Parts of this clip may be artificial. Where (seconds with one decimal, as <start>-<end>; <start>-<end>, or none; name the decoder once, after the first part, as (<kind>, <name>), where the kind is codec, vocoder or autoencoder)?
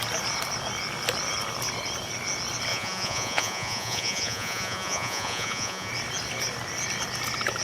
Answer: 2.7-5.9 (vocoder, Vocos)